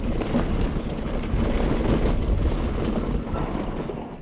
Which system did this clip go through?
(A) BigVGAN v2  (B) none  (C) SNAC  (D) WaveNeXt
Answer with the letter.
B